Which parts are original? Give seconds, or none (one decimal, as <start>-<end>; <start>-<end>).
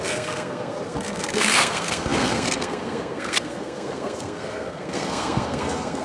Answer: none